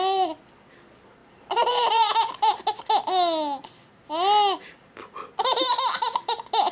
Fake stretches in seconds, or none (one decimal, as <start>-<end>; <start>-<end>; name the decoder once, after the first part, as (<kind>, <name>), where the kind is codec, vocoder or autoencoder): 1.2-2.9 (vocoder, BigVGAN v2)